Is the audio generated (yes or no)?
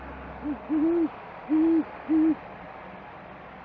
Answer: no